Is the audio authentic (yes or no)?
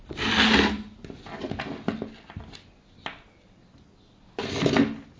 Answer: yes